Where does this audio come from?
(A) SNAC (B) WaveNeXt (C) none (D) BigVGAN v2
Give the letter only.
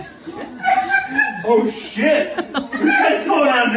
C